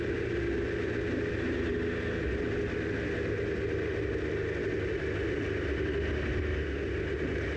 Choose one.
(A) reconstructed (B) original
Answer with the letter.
B